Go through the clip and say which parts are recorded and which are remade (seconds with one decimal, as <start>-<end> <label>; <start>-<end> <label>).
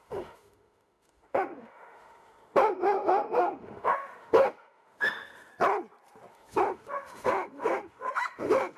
0.0-5.5 remade; 5.5-6.3 recorded; 6.3-8.8 remade